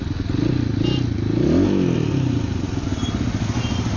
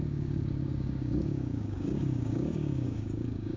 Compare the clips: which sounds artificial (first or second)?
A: second